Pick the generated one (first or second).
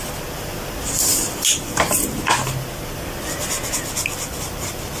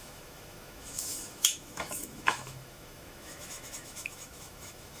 second